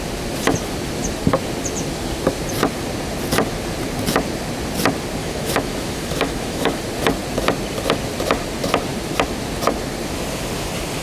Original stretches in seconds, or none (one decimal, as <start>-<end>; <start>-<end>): 0.0-5.2; 6.8-11.0